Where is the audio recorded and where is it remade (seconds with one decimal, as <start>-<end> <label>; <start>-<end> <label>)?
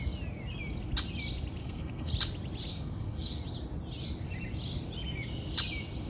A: 0.0-1.6 recorded; 1.6-2.1 remade; 2.1-2.7 recorded; 2.7-3.3 remade; 3.3-6.1 recorded